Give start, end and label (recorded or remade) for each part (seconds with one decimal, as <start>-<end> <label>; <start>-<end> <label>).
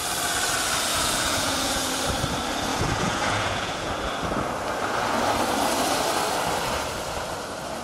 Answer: 0.0-0.9 recorded; 0.9-1.9 remade; 1.9-2.7 recorded; 2.7-3.9 remade; 3.9-7.8 recorded